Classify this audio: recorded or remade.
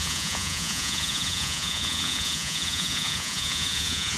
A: remade